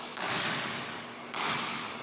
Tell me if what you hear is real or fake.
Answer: fake